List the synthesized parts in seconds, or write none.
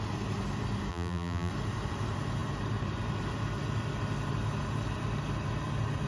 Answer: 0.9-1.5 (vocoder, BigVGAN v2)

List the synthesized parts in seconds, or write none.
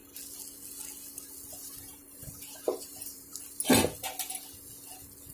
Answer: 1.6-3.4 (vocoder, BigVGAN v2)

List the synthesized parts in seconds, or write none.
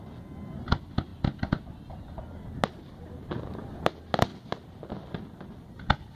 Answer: none